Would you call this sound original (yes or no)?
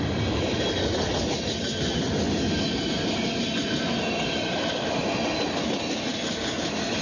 yes